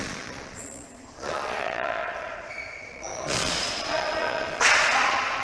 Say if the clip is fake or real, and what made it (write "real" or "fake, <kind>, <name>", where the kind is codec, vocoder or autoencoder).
fake, vocoder, Vocos